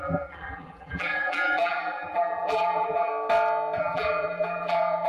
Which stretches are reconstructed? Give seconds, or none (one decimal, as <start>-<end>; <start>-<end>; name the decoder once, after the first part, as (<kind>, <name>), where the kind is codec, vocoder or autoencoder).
0.0-3.1 (vocoder, BigVGAN v2); 3.8-5.1